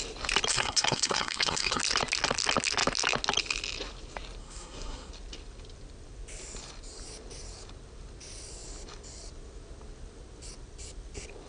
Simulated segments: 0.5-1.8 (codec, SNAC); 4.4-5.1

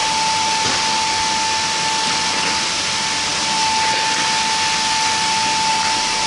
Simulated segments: none

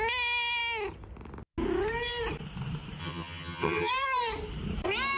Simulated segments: 3.0-3.9 (vocoder, HiFi-GAN)

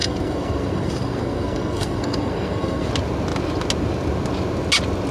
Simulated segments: 0.0-2.9 (codec, SNAC)